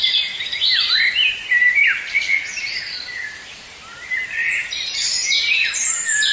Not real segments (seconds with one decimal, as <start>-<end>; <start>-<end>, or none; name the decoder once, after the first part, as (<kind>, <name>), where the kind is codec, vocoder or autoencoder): 0.0-1.8 (vocoder, BigVGAN v2); 3.3-6.3